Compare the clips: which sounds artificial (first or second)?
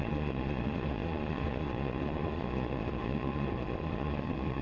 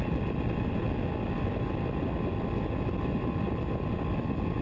first